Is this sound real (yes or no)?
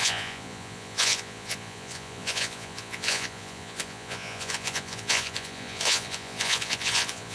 no